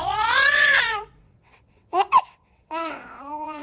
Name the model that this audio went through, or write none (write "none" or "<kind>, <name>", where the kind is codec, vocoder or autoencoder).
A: vocoder, WaveNeXt